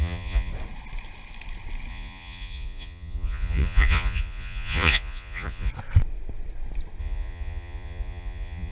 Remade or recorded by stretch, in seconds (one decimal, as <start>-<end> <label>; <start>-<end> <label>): 0.0-0.5 remade; 0.5-1.9 recorded; 1.9-5.7 remade; 5.7-7.0 recorded; 7.0-8.7 remade

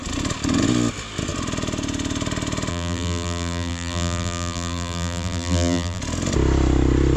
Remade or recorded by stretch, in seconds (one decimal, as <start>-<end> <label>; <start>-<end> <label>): 0.0-2.7 recorded; 2.7-6.0 remade; 6.0-7.2 recorded

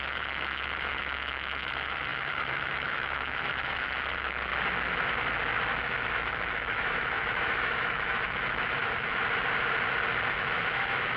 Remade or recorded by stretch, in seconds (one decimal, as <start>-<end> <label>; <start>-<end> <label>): 0.0-4.5 remade; 4.5-5.8 recorded; 5.8-9.2 remade; 9.2-10.3 recorded; 10.3-11.2 remade

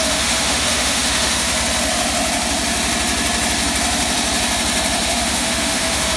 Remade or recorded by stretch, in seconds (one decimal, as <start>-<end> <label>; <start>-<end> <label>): 0.0-1.5 remade; 1.5-5.1 recorded; 5.1-6.2 remade

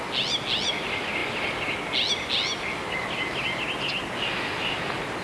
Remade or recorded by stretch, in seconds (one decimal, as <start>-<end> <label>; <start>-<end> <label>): 0.0-5.2 recorded

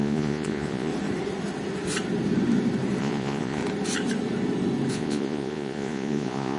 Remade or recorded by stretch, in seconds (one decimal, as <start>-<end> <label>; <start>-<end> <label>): 0.0-0.9 remade; 0.9-3.0 recorded; 3.0-3.6 remade; 3.6-4.9 recorded; 4.9-6.6 remade